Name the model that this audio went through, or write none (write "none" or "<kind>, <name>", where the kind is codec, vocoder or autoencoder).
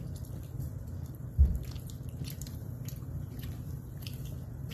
vocoder, BigVGAN v2